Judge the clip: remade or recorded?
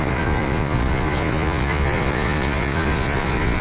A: remade